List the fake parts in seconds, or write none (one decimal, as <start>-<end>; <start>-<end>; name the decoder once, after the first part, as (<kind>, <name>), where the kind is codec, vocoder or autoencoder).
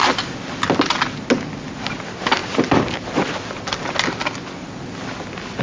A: none